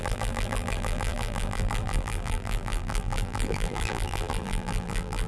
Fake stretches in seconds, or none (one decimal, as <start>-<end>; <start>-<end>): 0.0-5.3